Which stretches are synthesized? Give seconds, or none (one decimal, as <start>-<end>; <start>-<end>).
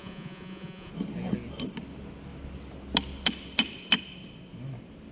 0.0-0.9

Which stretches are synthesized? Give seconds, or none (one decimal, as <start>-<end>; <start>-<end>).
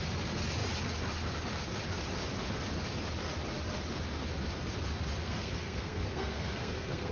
5.2-7.1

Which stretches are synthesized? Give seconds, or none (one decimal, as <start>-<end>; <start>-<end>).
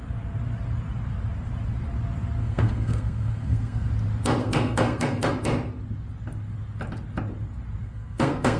2.4-3.9; 4.4-5.3; 7.8-8.6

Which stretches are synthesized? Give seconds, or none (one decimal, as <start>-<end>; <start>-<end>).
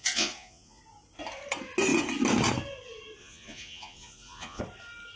0.0-0.8; 3.2-4.6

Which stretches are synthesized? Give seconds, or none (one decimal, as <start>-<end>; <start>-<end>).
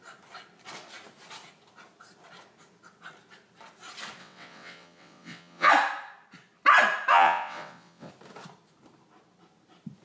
4.2-5.7; 7.1-8.1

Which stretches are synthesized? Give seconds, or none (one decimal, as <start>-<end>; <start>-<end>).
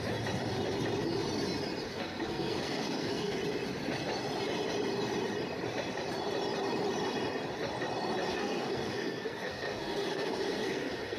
1.9-3.4; 8.3-11.2